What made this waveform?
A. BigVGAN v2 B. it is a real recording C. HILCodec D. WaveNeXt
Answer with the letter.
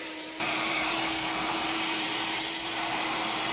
A